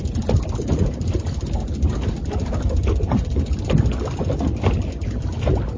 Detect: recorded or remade recorded